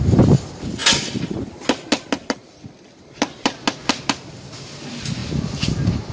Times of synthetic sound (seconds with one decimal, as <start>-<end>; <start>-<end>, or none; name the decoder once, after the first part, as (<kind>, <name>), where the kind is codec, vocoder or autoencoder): none